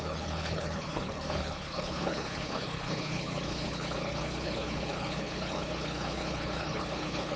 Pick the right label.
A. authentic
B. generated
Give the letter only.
B